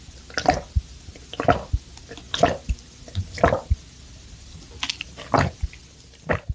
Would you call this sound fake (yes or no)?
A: no